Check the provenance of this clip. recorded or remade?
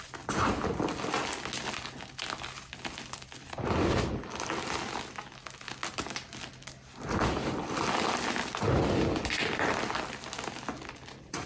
recorded